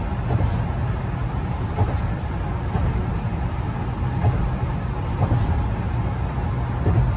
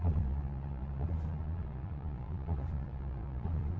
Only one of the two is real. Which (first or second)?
first